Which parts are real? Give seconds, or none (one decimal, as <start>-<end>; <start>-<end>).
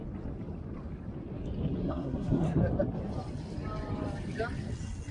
0.0-1.8; 2.6-5.1